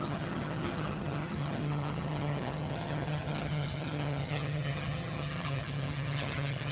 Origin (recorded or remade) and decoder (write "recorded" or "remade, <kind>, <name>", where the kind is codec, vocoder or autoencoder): remade, vocoder, HiFi-GAN